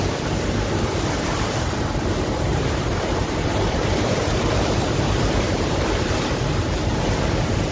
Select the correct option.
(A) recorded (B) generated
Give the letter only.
B